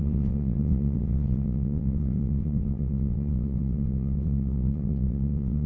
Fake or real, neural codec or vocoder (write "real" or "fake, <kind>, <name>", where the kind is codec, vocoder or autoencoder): fake, vocoder, WaveNeXt